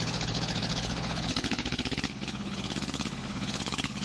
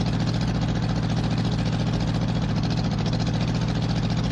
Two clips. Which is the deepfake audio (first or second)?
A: first